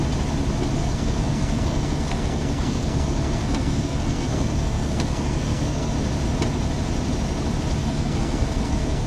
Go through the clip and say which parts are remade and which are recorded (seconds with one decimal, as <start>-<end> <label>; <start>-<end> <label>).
0.0-0.8 recorded; 0.8-5.9 remade; 5.9-7.8 recorded; 7.8-9.1 remade